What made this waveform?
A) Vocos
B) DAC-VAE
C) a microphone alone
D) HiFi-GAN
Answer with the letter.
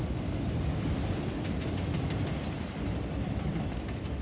C